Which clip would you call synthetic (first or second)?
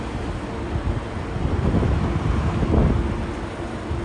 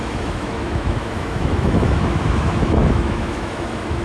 second